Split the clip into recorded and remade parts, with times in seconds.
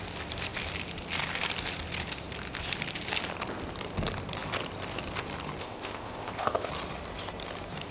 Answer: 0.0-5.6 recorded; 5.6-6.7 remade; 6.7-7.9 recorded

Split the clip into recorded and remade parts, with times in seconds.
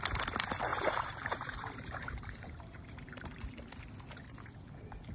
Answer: 0.0-0.7 recorded; 0.7-3.8 remade; 3.8-5.1 recorded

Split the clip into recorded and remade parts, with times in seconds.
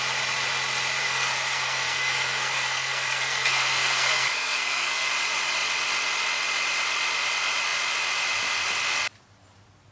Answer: 0.0-1.0 recorded; 1.0-5.1 remade; 5.1-9.9 recorded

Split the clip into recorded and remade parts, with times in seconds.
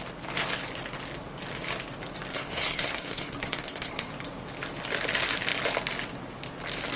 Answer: 0.0-2.3 recorded; 2.3-4.1 remade; 4.1-7.0 recorded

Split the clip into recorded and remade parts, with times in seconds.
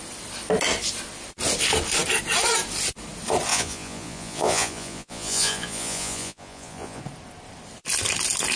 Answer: 0.0-3.5 recorded; 3.5-7.0 remade; 7.0-8.6 recorded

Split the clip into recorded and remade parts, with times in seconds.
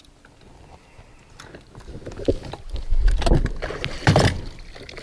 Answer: 0.0-5.0 recorded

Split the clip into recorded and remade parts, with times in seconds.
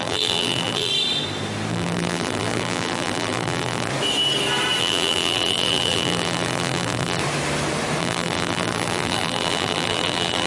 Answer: 0.0-0.9 remade; 0.9-1.7 recorded; 1.7-3.9 remade; 3.9-4.8 recorded; 4.8-7.2 remade; 7.2-8.0 recorded; 8.0-10.5 remade